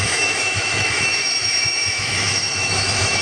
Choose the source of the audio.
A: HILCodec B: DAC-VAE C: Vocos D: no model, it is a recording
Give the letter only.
B